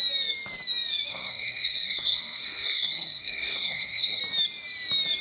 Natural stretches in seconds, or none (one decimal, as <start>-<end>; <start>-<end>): 0.0-1.1; 4.2-5.2